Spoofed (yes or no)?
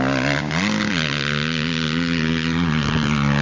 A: no